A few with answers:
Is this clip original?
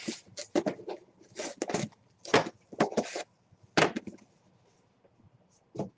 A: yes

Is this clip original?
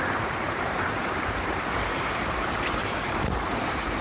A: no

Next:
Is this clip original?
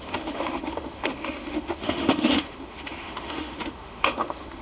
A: no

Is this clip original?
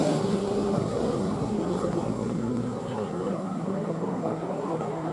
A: no